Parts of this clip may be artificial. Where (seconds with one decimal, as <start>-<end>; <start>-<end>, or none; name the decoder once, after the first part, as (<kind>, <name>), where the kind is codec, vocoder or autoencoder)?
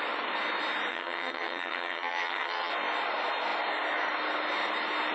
0.9-2.7 (vocoder, HiFi-GAN)